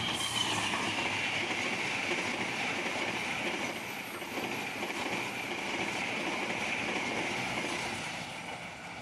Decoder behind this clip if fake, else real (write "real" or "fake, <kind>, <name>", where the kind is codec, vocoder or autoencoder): real